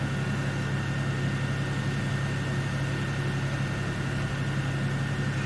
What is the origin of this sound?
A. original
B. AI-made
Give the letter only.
A